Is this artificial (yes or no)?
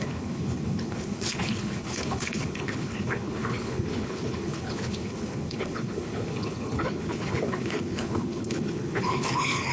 yes